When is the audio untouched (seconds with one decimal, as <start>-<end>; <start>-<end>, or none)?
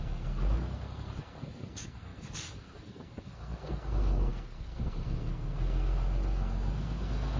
none